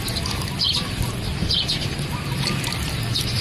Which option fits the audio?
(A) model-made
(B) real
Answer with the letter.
B